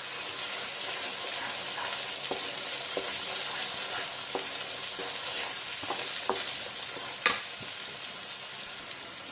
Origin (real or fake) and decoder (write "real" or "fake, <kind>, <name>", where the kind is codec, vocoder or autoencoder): real